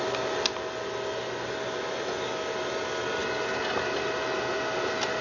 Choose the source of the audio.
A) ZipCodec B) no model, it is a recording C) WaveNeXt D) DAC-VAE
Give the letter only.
B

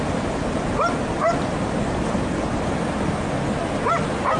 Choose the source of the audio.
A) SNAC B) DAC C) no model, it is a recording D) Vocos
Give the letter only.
C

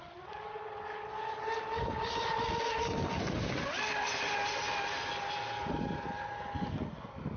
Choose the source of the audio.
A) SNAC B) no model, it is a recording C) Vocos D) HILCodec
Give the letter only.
B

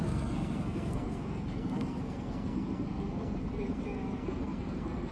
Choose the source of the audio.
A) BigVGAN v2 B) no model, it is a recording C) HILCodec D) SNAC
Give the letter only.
D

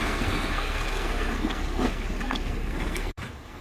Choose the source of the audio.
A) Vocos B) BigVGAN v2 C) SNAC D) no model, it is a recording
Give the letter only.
C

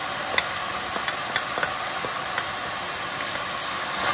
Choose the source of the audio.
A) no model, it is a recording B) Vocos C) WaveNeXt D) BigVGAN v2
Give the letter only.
A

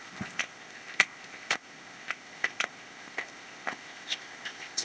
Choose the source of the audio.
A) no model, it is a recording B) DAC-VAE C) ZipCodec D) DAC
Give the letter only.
C